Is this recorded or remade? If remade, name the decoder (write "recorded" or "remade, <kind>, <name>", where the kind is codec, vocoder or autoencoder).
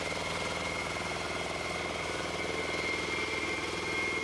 recorded